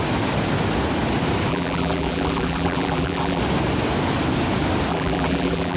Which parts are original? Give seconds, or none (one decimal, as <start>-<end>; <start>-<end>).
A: 0.0-1.5; 3.4-4.9